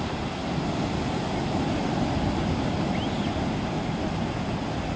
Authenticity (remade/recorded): recorded